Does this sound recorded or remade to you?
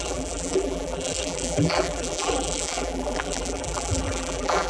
remade